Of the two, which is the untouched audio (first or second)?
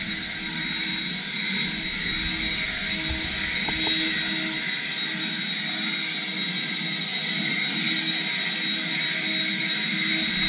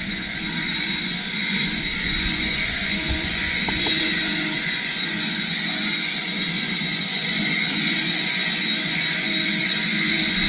first